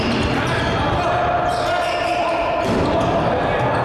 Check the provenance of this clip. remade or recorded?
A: recorded